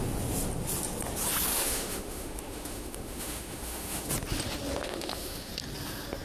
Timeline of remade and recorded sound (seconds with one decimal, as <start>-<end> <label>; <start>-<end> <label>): 0.0-1.5 recorded; 1.5-4.1 remade; 4.1-4.8 recorded; 4.8-5.5 remade; 5.5-6.2 recorded